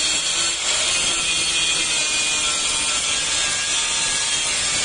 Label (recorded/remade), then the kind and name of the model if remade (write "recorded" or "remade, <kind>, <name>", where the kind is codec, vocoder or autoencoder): recorded